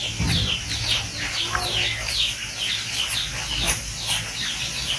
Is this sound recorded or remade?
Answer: recorded